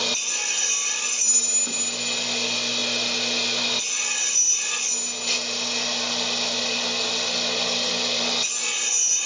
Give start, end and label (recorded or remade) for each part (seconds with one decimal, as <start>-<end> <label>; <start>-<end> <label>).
0.0-9.3 recorded